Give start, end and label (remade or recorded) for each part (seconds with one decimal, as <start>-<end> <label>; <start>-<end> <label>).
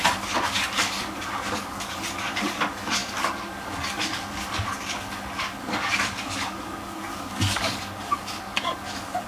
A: 0.0-9.3 remade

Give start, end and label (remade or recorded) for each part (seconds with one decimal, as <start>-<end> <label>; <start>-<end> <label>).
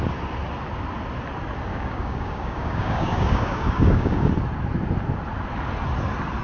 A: 0.0-1.7 recorded; 1.7-4.3 remade; 4.3-6.4 recorded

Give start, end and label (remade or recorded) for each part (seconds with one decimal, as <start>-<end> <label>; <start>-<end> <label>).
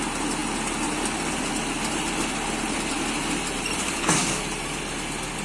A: 0.0-3.8 recorded; 3.8-4.4 remade; 4.4-5.4 recorded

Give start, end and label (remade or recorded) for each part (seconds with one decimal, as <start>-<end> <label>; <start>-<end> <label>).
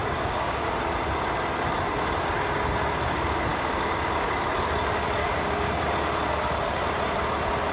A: 0.0-0.7 remade; 0.7-3.5 recorded; 3.5-4.3 remade; 4.3-5.2 recorded; 5.2-5.9 remade; 5.9-7.7 recorded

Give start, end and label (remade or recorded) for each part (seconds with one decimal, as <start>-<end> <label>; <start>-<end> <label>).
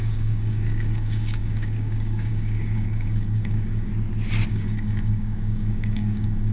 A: 0.0-3.9 remade; 3.9-4.5 recorded; 4.5-6.5 remade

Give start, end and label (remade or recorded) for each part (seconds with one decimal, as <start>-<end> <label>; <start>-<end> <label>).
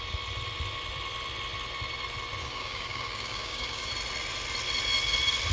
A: 0.0-2.4 recorded; 2.4-3.9 remade; 3.9-5.5 recorded